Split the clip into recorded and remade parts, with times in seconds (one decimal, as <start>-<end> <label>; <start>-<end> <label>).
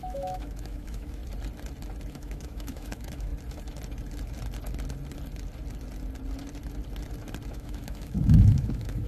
0.0-1.2 remade; 1.2-2.1 recorded; 2.1-3.3 remade; 3.3-7.5 recorded; 7.5-9.1 remade